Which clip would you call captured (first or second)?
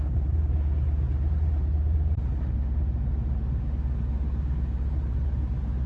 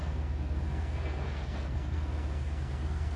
first